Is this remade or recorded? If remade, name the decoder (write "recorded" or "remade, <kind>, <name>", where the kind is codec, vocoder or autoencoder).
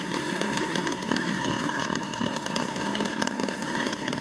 remade, codec, SNAC